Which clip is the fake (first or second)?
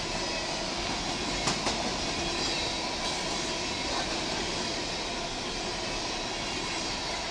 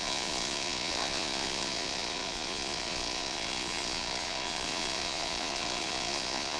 second